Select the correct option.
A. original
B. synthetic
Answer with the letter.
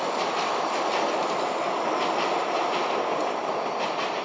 A